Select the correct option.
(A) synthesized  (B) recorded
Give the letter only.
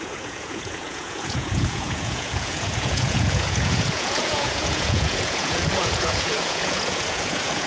A